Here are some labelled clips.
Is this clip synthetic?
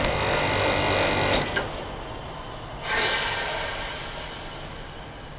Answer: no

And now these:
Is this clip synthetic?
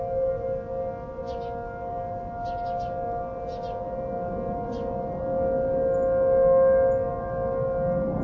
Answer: no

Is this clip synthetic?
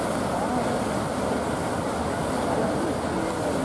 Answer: no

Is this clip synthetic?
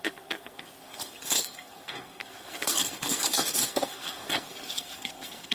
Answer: yes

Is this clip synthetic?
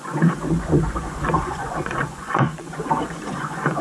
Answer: yes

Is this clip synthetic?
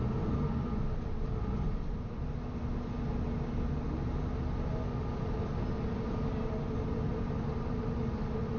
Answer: no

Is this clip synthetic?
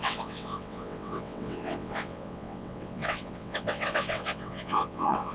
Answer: yes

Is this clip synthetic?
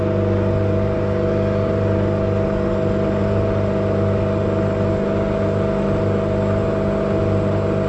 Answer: no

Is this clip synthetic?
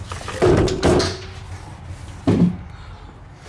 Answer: no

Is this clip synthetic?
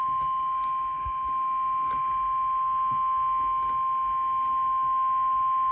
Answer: no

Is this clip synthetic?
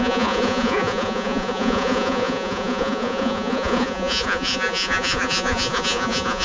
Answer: yes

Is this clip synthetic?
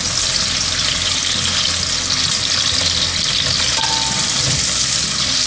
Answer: no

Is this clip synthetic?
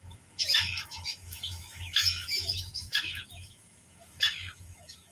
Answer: yes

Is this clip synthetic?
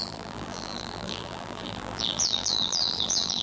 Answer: yes